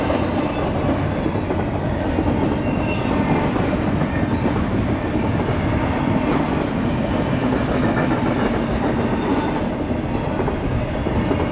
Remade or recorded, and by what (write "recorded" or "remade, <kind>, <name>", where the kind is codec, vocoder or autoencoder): recorded